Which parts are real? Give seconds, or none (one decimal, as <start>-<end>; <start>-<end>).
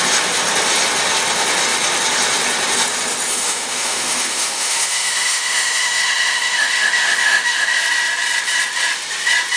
0.0-3.3; 7.8-9.6